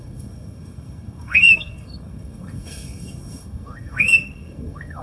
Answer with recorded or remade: remade